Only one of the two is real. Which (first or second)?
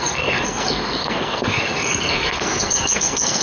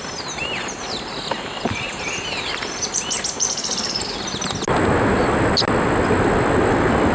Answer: second